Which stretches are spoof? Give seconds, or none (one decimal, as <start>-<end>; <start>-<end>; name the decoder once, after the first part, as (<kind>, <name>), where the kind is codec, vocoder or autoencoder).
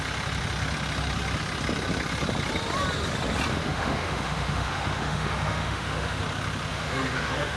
3.5-6.2 (autoencoder, DAC-VAE); 6.7-7.6